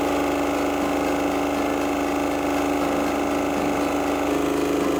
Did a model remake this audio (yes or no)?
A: no